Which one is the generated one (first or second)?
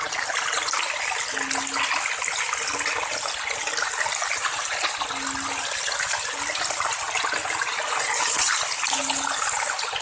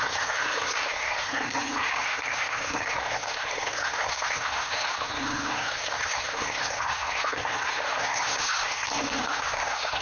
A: second